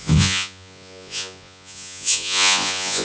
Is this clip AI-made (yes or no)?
yes